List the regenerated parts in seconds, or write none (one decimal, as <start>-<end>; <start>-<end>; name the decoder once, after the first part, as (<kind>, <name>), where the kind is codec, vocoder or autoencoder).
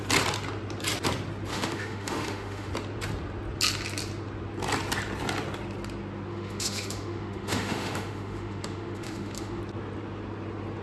1.5-2.7 (autoencoder, DAC-VAE); 6.3-9.6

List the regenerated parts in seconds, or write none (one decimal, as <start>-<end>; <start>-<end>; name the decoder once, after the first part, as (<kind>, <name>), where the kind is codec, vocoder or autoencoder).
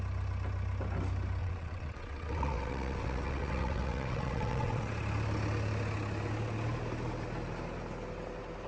1.4-4.9 (vocoder, WaveNeXt)